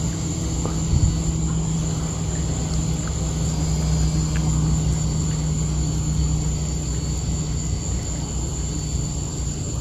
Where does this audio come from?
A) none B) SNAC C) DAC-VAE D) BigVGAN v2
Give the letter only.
A